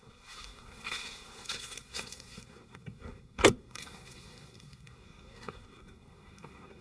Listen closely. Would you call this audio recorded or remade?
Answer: remade